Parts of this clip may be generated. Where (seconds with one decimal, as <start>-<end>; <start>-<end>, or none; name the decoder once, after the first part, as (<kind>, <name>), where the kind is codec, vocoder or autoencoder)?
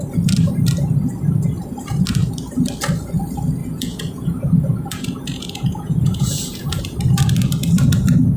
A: 3.6-6.8 (vocoder, Vocos)